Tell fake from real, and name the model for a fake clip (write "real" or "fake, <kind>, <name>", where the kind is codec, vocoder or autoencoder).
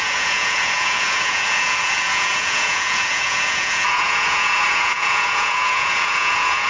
fake, vocoder, Vocos